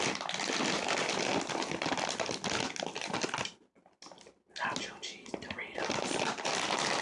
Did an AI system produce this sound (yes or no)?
no